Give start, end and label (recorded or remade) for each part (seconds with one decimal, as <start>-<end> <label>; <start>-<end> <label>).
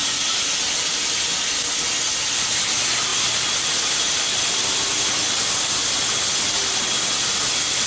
0.0-7.9 recorded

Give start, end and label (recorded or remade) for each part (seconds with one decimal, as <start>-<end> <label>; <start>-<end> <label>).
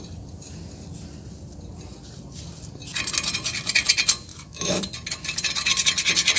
0.0-4.3 recorded; 4.3-4.8 remade; 4.8-6.4 recorded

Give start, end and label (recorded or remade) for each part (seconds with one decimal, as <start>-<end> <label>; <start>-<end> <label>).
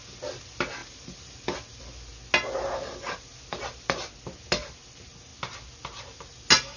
0.0-0.8 recorded; 0.8-1.8 remade; 1.8-6.8 recorded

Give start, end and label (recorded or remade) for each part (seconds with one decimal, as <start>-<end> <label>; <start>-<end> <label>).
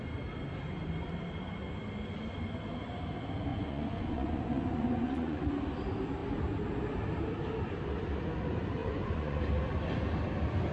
0.0-3.5 recorded; 3.5-5.5 remade; 5.5-8.8 recorded; 8.8-9.4 remade; 9.4-10.7 recorded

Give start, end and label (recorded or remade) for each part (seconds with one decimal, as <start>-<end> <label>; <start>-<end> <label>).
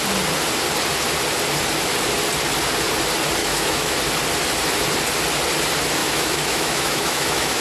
0.0-3.4 recorded; 3.4-4.0 remade; 4.0-6.0 recorded; 6.0-7.6 remade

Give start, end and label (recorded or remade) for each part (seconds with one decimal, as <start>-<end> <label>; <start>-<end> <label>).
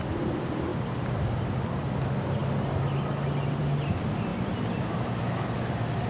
0.0-0.7 recorded; 0.7-1.6 remade; 1.6-4.3 recorded; 4.3-5.2 remade; 5.2-6.1 recorded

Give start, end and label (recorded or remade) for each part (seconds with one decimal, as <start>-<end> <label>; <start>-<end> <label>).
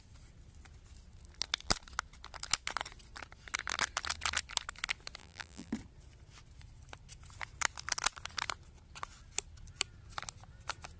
0.0-5.2 recorded; 5.2-5.7 remade; 5.7-11.0 recorded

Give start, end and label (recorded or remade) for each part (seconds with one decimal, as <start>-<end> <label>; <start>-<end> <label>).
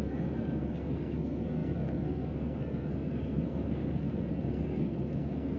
0.0-5.6 remade